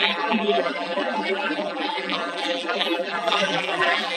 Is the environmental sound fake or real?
fake